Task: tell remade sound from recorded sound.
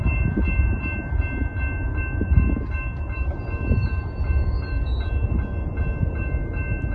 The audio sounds recorded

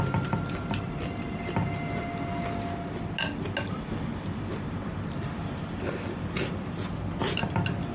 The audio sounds recorded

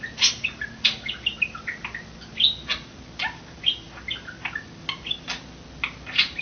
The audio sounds recorded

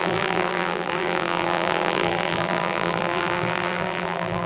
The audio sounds remade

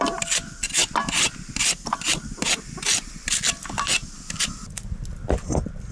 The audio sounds recorded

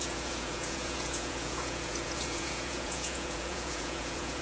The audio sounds remade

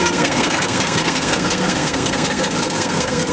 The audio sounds remade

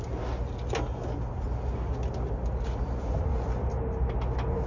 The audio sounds recorded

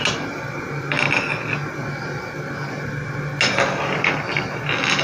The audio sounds recorded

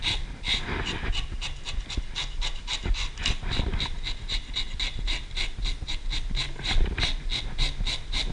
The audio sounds recorded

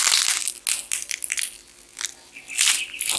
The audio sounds recorded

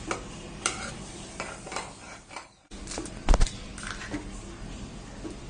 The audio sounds recorded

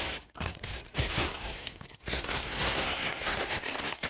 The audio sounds remade